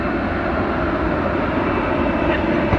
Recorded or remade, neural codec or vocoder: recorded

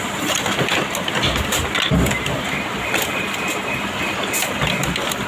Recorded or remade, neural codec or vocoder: recorded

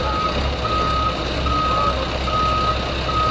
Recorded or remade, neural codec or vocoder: recorded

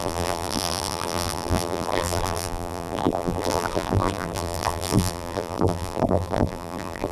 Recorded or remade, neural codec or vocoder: remade, vocoder, BigVGAN v2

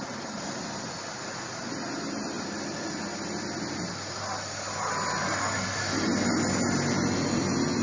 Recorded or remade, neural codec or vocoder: recorded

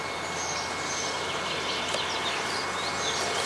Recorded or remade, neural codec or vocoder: recorded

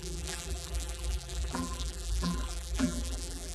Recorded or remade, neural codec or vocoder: remade, vocoder, BigVGAN v2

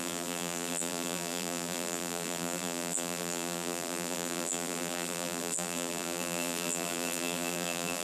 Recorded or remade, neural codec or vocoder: remade, vocoder, BigVGAN v2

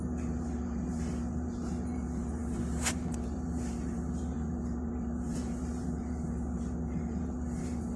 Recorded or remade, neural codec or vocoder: remade, vocoder, BigVGAN v2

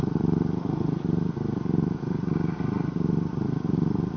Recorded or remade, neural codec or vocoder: recorded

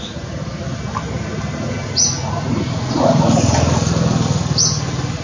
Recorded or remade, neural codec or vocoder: recorded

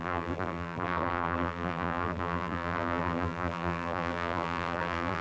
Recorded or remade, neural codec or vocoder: remade, vocoder, BigVGAN v2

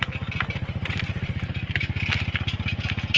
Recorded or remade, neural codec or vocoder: recorded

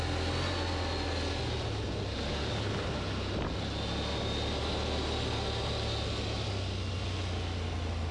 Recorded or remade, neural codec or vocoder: recorded